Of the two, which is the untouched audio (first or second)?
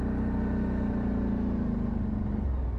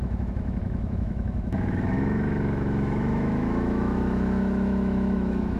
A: first